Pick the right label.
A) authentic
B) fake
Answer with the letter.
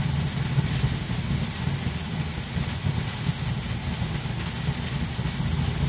A